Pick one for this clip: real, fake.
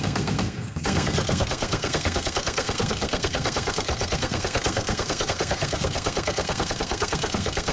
fake